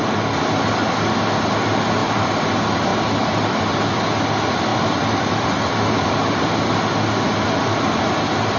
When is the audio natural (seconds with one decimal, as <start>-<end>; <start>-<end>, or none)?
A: 0.0-2.0; 2.5-4.7; 6.2-8.6